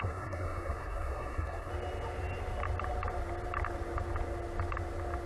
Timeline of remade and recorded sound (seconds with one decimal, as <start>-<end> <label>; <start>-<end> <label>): 0.0-1.7 remade; 1.7-5.3 recorded